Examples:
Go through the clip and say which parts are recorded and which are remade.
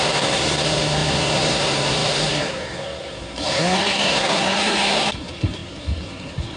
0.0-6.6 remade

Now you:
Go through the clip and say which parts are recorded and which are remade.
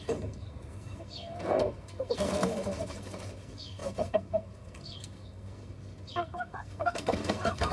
0.0-7.7 remade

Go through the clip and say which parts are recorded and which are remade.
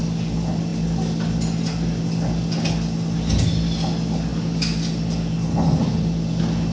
0.0-6.7 recorded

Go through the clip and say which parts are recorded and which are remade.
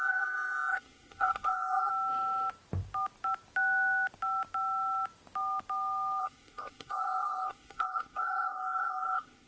0.0-1.9 remade; 1.9-6.2 recorded; 6.2-9.5 remade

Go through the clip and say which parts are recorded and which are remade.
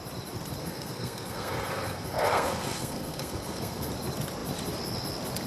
0.0-0.6 recorded; 0.6-3.9 remade; 3.9-5.5 recorded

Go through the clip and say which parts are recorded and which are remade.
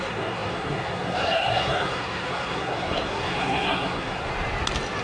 0.0-4.3 remade; 4.3-5.0 recorded